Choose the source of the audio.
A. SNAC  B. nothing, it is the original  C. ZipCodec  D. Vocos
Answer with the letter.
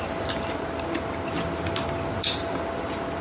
B